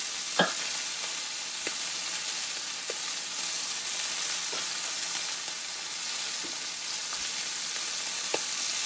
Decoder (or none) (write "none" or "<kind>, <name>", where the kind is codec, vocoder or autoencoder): none